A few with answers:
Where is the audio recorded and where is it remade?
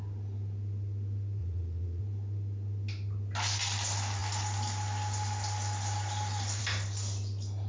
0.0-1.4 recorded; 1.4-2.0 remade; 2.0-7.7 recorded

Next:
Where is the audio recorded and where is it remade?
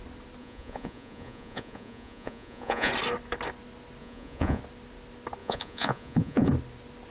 0.0-0.4 recorded; 0.4-2.9 remade; 2.9-4.0 recorded; 4.0-4.6 remade; 4.6-5.4 recorded; 5.4-6.5 remade; 6.5-7.1 recorded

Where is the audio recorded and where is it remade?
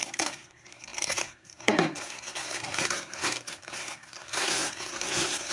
0.0-5.5 remade